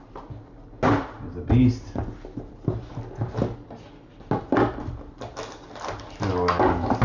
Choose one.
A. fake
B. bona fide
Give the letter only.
B